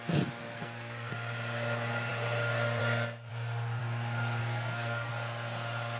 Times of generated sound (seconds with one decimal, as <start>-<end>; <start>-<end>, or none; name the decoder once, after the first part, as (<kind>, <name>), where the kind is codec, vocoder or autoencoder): 0.4-1.1 (codec, SNAC); 4.4-5.1